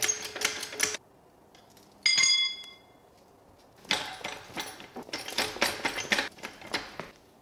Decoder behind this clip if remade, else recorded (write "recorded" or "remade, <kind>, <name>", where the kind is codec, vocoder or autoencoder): recorded